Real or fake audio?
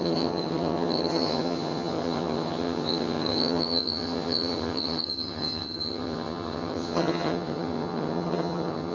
fake